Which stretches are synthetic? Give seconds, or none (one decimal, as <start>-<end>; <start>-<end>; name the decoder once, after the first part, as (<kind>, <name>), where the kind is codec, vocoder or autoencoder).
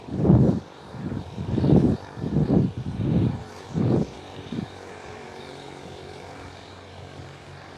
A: 0.0-2.4 (codec, DAC); 3.5-7.8